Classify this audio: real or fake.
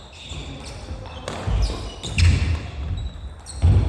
real